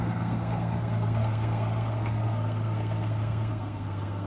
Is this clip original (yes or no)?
no